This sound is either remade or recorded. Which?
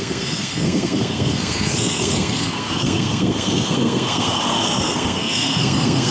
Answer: remade